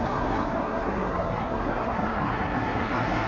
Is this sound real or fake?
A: fake